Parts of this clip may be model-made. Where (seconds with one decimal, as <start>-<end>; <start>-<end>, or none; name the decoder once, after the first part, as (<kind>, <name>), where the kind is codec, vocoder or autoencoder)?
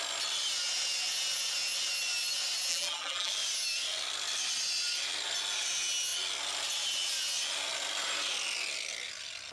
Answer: 2.7-3.3 (vocoder, BigVGAN v2)